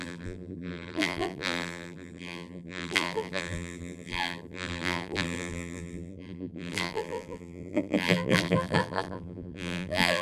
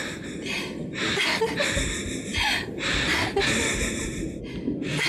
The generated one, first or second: first